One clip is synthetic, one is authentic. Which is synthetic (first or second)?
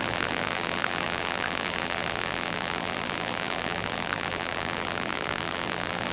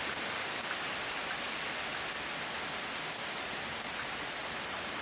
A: first